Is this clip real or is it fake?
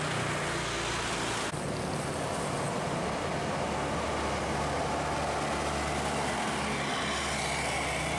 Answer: real